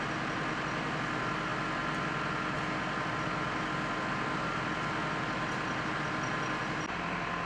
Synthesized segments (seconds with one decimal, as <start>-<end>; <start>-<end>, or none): none

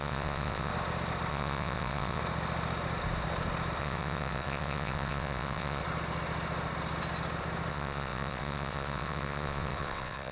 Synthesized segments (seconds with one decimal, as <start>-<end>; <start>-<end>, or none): 0.0-0.7; 1.3-2.2; 3.8-5.8; 7.7-10.3

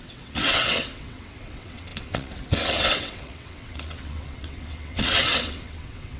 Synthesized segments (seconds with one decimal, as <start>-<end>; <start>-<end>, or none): 0.0-6.2

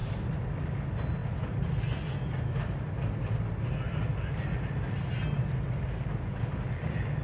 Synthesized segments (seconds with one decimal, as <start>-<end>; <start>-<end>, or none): none

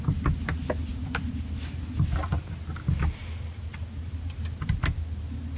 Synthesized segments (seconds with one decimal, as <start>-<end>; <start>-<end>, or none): none

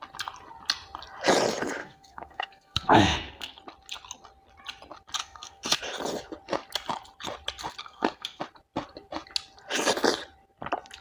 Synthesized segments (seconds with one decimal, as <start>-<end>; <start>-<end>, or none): 1.8-3.6; 5.2-5.8; 7.8-8.4

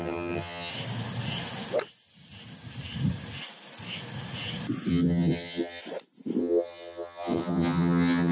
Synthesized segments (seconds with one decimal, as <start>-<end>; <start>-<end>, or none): 0.0-0.7; 4.9-5.8; 6.4-8.3